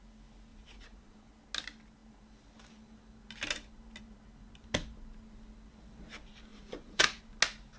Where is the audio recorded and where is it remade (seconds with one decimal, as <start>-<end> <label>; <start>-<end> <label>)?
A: 0.0-0.5 recorded; 0.5-1.3 remade; 1.3-6.5 recorded; 6.5-7.2 remade; 7.2-7.8 recorded